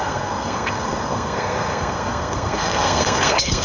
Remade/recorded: remade